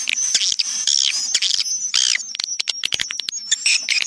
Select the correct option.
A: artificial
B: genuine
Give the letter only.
B